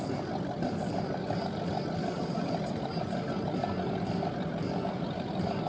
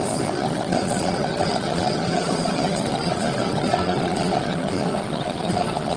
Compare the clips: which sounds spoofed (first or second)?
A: second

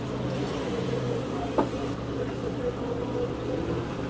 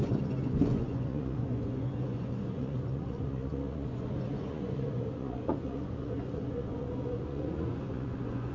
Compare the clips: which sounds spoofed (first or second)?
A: second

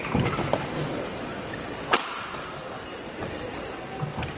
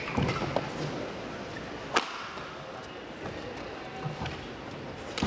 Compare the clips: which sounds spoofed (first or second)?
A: first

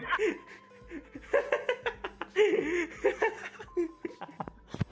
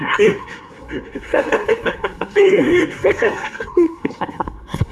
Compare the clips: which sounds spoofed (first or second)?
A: second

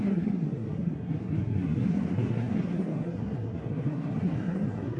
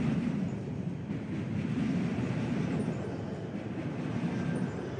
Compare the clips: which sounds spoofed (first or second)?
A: first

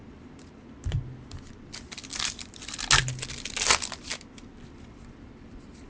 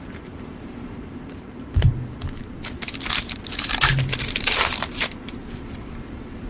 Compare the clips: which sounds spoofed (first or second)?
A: second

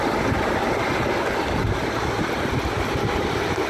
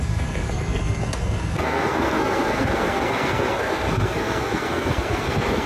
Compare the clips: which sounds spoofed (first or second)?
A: second